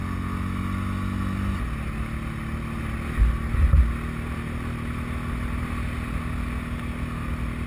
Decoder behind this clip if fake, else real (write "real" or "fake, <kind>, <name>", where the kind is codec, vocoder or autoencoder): real